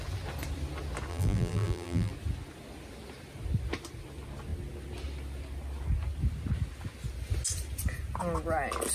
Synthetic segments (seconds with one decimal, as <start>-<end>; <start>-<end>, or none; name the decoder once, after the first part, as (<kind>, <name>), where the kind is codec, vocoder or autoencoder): 1.1-2.1 (vocoder, BigVGAN v2)